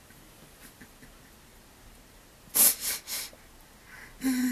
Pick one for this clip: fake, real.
real